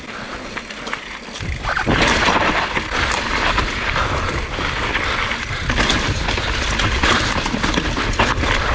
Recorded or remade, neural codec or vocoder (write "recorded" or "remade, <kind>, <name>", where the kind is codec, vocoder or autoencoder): remade, vocoder, BigVGAN v2